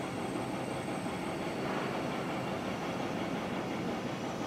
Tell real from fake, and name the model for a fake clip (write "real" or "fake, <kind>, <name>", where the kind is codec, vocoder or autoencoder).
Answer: real